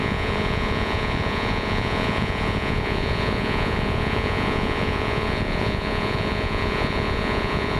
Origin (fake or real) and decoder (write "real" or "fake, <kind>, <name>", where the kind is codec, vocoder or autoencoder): fake, vocoder, Vocos